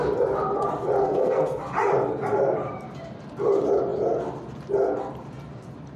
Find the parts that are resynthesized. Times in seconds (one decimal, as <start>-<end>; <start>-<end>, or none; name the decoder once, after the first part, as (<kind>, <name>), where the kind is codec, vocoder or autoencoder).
1.0-1.6 (codec, SNAC)